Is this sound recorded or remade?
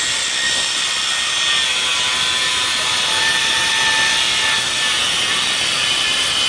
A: recorded